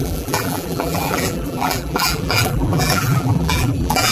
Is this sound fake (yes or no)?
yes